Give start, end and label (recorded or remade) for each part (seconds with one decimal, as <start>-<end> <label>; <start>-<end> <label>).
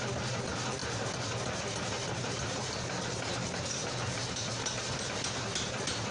0.0-3.8 recorded; 3.8-4.5 remade; 4.5-6.1 recorded